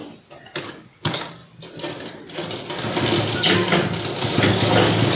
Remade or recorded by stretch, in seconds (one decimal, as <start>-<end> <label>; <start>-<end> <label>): 0.0-0.6 recorded; 0.6-1.4 remade; 1.4-4.5 recorded; 4.5-5.2 remade